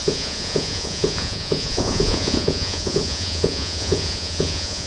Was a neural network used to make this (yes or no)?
yes